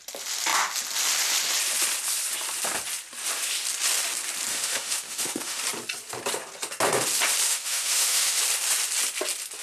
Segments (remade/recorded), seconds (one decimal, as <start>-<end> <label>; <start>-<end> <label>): 0.0-4.5 recorded; 4.5-5.6 remade; 5.6-7.5 recorded; 7.5-8.4 remade; 8.4-9.6 recorded